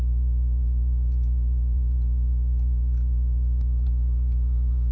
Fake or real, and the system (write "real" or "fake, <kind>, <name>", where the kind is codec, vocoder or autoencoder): fake, vocoder, Vocos